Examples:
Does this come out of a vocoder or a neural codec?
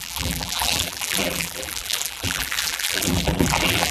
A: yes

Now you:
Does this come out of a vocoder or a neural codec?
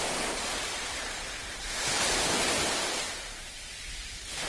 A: yes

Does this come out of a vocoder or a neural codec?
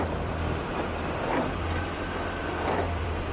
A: yes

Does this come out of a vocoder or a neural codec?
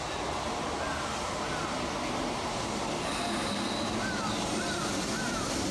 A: no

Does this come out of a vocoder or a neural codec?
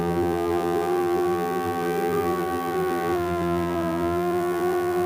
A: yes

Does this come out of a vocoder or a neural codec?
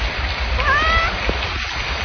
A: yes